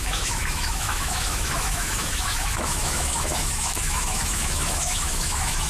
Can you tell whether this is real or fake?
fake